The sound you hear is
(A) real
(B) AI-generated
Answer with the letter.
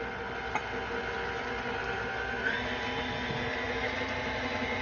A